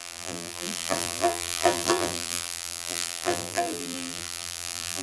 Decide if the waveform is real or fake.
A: fake